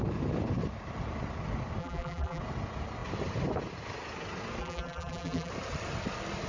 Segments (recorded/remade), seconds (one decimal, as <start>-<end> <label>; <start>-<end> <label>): 0.0-1.8 recorded; 1.8-2.4 remade; 2.4-4.6 recorded; 4.6-5.5 remade; 5.5-6.5 recorded